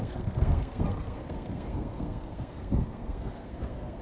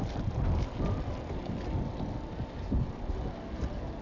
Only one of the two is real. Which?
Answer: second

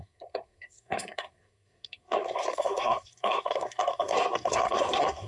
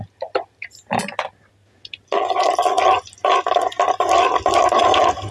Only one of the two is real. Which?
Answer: second